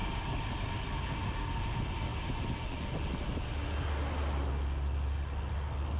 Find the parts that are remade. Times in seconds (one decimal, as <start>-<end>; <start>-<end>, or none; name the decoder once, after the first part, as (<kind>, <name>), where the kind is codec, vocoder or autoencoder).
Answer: none